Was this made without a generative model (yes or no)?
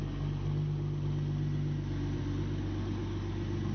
yes